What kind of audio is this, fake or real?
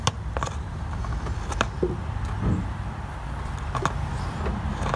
real